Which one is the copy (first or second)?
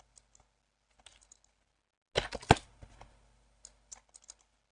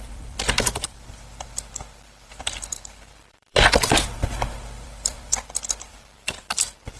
second